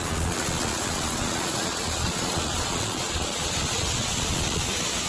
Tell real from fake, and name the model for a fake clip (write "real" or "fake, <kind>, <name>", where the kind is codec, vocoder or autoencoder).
fake, vocoder, Vocos